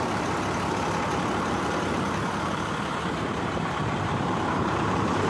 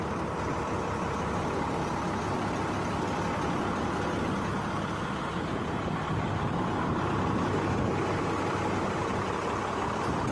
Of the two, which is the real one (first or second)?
second